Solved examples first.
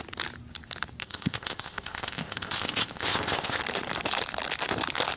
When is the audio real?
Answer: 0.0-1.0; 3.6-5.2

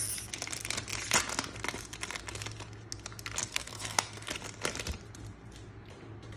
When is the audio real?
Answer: 0.0-3.4; 4.3-6.4

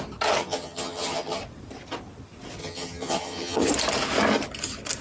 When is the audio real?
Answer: 0.0-0.4; 1.4-2.6; 3.7-5.0

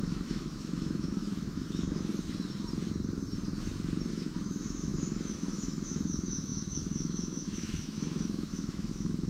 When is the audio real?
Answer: 2.1-4.1